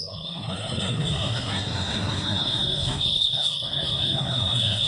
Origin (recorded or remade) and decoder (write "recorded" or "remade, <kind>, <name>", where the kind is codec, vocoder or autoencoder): remade, codec, SNAC